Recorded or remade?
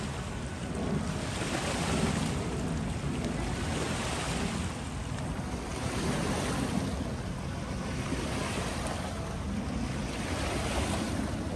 recorded